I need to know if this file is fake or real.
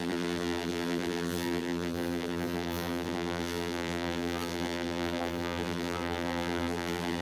fake